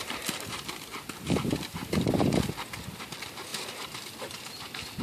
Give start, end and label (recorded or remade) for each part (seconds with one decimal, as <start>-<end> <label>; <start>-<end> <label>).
0.0-5.0 remade